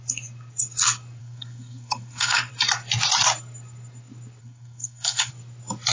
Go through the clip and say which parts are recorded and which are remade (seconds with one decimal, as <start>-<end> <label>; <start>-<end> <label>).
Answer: 0.0-1.2 recorded; 1.2-2.5 remade; 2.5-4.4 recorded; 4.4-5.3 remade; 5.3-5.9 recorded